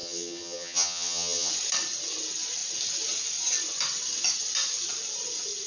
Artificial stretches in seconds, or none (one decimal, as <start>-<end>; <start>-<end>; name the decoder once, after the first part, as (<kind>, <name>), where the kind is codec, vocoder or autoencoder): 0.0-1.5 (vocoder, HiFi-GAN)